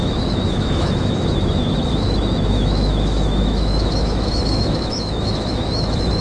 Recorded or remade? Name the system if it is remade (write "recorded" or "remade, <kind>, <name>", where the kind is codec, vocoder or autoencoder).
remade, autoencoder, DAC-VAE